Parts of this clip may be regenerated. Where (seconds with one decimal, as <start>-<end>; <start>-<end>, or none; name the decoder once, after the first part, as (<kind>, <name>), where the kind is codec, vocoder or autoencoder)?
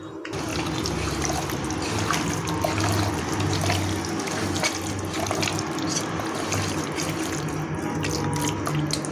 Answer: none